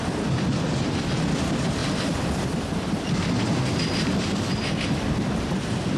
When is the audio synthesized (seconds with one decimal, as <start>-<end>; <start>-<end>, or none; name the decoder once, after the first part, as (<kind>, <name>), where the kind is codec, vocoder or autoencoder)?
1.8-5.4 (vocoder, BigVGAN v2)